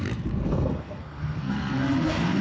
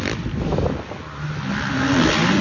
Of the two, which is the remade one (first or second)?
first